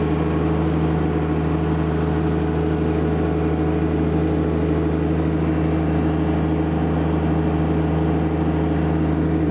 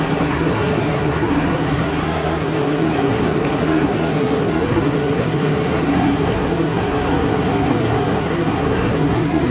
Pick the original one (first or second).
first